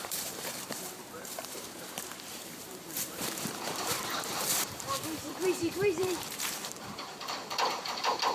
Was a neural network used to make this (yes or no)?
yes